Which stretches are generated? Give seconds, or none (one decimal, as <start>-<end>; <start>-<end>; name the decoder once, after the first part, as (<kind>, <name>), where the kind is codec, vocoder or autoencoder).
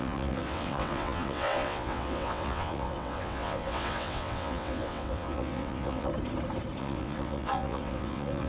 0.0-6.1 (vocoder, WaveNeXt); 6.8-8.5